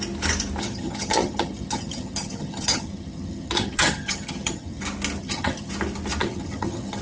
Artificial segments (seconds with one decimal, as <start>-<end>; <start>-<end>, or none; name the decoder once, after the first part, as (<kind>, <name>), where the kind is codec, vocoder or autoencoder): 0.6-4.8 (vocoder, HiFi-GAN); 5.2-5.7; 6.2-7.0